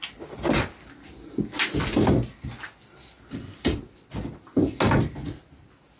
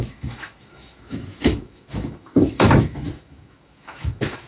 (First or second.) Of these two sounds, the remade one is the second